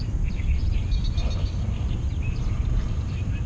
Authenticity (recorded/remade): recorded